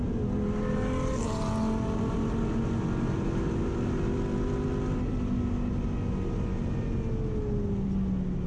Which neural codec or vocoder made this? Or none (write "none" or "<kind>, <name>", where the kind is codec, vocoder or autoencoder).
none